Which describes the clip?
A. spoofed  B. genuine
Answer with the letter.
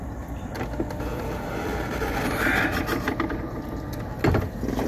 B